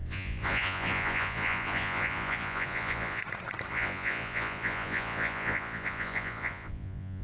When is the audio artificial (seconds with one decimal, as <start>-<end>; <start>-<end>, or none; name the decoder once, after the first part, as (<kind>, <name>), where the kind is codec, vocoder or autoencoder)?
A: 0.0-3.2 (vocoder, Vocos); 3.7-7.2